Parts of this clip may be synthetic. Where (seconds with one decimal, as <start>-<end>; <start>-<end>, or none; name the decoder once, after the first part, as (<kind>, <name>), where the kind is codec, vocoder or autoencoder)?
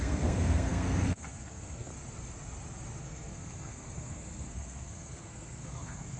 0.0-1.9 (codec, SNAC); 3.0-6.2